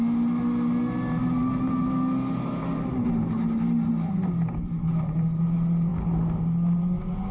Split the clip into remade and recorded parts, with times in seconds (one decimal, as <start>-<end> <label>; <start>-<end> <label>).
0.0-7.3 recorded